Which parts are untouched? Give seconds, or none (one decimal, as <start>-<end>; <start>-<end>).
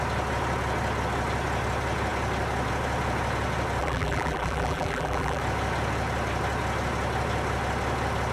0.0-3.8; 5.4-8.3